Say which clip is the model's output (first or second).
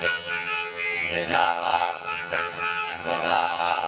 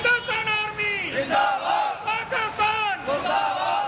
first